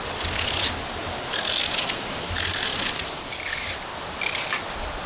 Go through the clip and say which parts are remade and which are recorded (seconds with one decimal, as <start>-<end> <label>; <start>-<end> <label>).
0.0-5.1 recorded